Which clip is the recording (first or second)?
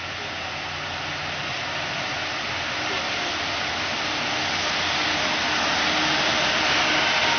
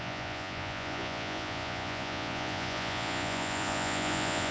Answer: first